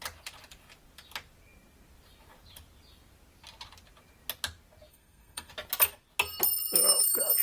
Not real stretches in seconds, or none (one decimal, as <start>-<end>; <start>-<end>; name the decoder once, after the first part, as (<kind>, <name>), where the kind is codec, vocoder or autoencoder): 4.9-5.5 (codec, SNAC)

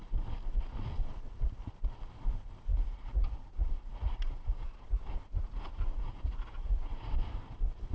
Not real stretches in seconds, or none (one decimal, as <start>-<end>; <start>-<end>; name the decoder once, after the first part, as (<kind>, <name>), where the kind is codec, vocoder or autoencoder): 2.7-7.1 (vocoder, Vocos)

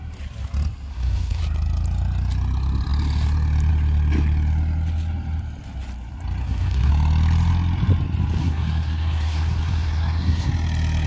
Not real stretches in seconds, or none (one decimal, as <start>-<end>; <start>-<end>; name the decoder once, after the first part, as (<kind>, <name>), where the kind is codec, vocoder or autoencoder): 0.9-1.4 (codec, SNAC); 6.4-6.9; 8.4-10.5

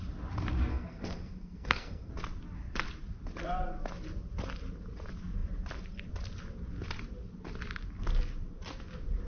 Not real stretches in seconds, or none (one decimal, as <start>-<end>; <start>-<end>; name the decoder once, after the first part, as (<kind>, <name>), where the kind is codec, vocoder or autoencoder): 0.7-2.1 (codec, SNAC)